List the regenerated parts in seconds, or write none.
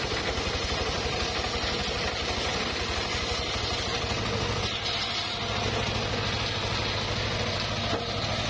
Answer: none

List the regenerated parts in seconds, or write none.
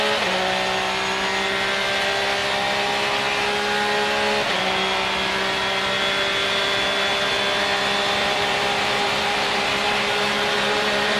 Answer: 8.2-11.2 (vocoder, BigVGAN v2)